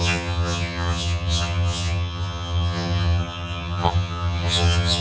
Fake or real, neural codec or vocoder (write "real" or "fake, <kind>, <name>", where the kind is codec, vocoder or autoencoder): fake, vocoder, HiFi-GAN